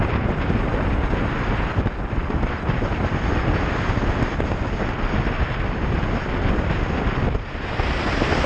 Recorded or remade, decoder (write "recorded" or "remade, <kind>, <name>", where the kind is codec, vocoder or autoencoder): recorded